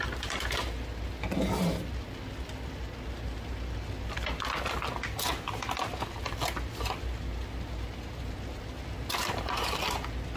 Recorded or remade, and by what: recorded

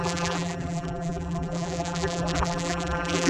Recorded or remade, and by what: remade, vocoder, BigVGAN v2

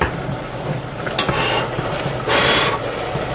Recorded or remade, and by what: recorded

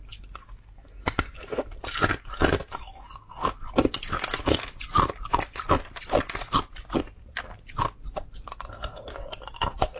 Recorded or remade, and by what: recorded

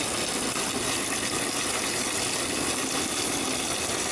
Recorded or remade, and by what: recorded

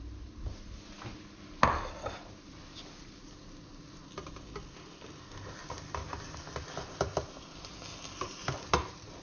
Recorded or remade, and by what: recorded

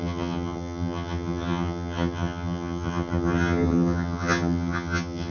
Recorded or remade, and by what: remade, vocoder, HiFi-GAN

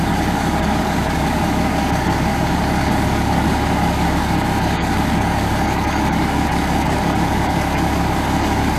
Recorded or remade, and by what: remade, codec, DAC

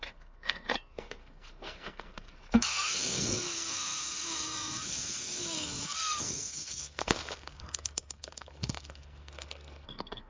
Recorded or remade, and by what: remade, codec, SNAC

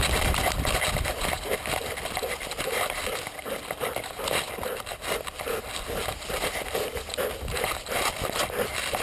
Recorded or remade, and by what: remade, vocoder, BigVGAN v2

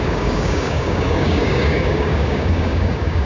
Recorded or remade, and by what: remade, codec, DAC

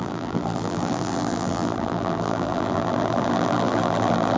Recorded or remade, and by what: remade, vocoder, BigVGAN v2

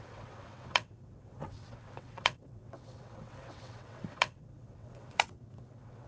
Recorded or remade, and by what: remade, vocoder, WaveNeXt